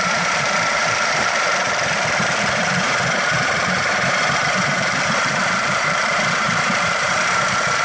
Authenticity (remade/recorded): remade